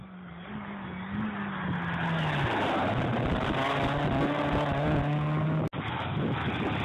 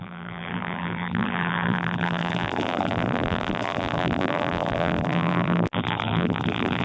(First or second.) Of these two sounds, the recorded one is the first